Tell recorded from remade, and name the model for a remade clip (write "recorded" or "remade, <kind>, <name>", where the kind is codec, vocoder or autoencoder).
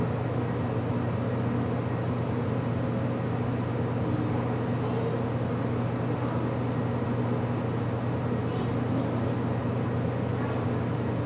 recorded